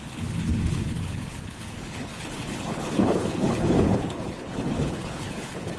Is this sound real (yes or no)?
no